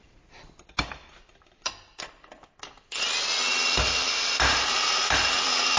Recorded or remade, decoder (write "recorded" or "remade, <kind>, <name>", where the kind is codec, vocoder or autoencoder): remade, vocoder, BigVGAN v2